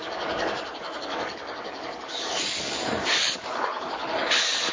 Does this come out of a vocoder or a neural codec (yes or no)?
yes